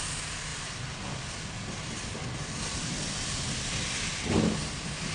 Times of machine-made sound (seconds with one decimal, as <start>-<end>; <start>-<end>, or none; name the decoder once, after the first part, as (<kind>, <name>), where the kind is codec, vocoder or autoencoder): 0.5-3.6 (vocoder, BigVGAN v2)